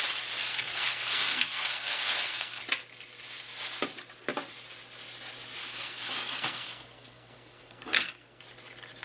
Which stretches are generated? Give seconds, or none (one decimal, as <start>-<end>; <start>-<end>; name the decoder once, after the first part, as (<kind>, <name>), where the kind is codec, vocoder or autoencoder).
0.4-2.6 (codec, SNAC); 5.6-8.4